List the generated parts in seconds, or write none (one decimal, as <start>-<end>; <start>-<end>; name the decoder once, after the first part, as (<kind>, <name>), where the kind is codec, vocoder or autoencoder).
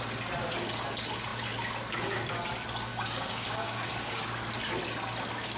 2.9-4.2 (codec, DAC)